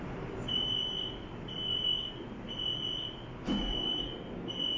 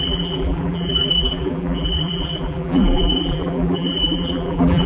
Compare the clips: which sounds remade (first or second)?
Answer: second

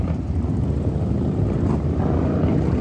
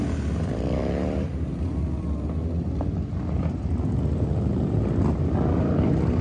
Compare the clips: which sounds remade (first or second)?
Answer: first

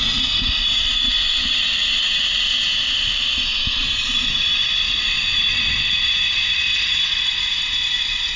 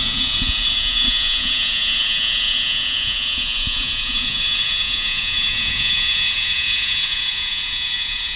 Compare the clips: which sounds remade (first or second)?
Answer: second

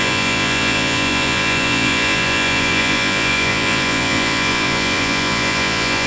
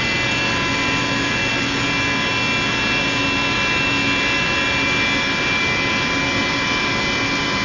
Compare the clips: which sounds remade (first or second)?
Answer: first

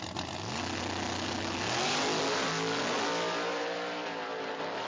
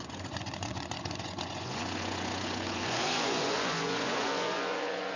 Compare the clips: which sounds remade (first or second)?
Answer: second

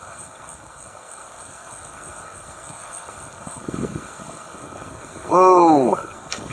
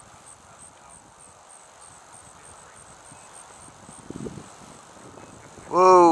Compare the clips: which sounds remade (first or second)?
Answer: first